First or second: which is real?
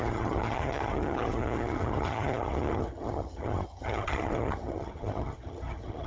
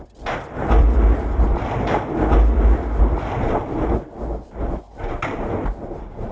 second